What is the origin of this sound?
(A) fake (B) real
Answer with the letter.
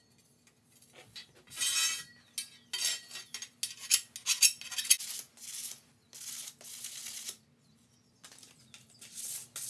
B